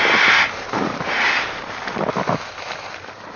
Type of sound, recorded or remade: recorded